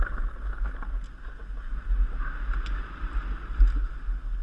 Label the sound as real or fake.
real